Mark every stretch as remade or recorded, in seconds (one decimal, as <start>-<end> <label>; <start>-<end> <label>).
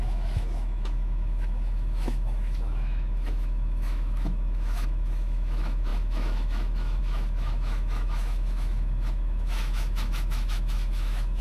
0.0-11.4 remade